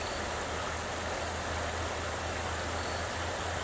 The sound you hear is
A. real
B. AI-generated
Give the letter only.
A